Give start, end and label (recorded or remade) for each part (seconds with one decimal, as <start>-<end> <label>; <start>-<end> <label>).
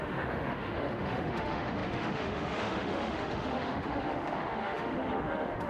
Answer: 0.0-5.7 remade